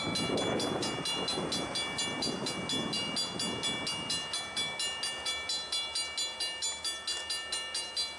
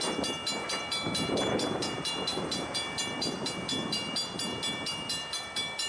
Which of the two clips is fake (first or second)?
second